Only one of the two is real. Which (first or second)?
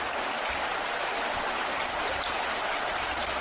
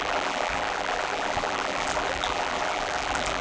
first